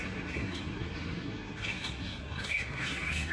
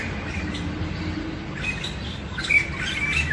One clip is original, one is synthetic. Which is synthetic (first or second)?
first